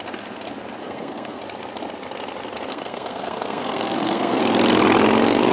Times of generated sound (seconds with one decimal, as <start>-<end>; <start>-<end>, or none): 0.8-1.4; 2.7-4.4